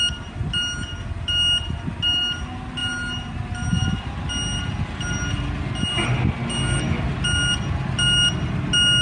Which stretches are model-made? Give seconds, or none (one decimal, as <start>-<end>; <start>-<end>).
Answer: none